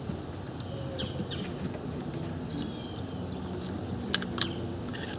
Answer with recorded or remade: recorded